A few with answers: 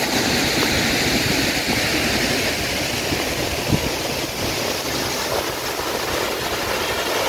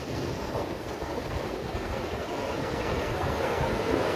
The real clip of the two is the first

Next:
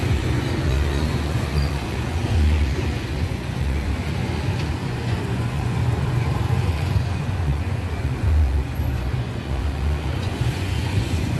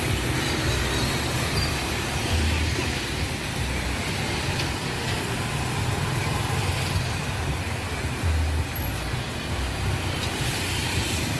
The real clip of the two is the second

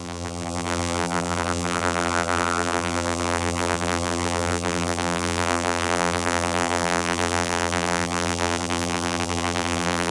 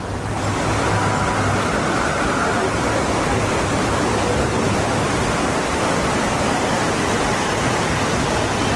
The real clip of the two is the second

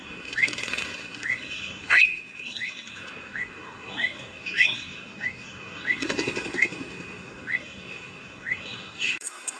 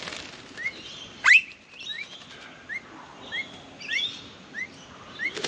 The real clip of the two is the second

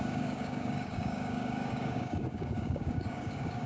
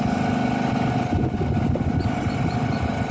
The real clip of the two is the second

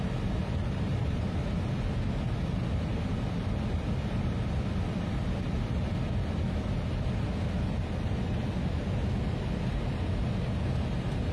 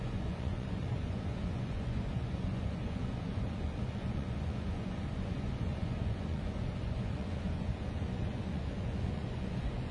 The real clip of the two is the first